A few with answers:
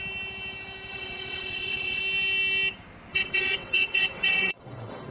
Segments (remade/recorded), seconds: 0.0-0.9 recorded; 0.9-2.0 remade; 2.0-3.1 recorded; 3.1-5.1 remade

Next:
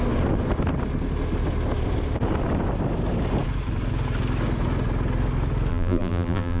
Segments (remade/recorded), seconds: 0.0-5.7 recorded; 5.7-6.6 remade

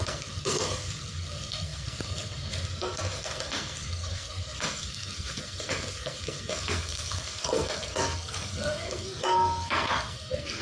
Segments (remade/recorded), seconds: 0.0-10.6 remade

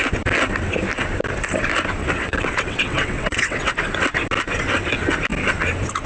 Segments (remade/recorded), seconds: 0.0-2.0 recorded; 2.0-3.7 remade; 3.7-6.1 recorded

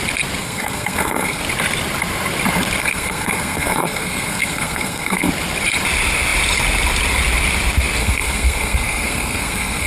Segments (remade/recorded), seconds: 0.0-0.4 recorded; 0.4-1.4 remade; 1.4-2.8 recorded; 2.8-5.3 remade; 5.3-8.0 recorded; 8.0-9.9 remade

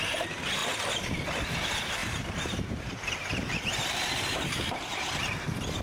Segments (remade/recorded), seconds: 0.0-0.6 remade; 0.6-1.5 recorded; 1.5-5.8 remade